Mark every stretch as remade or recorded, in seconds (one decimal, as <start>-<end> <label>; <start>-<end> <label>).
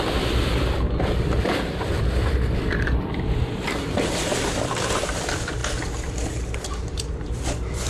0.0-7.9 remade